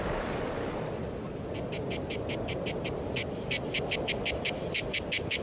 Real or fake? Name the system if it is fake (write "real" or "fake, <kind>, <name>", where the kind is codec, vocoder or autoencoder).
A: real